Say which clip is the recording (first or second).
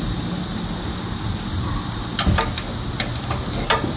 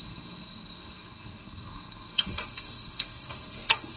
first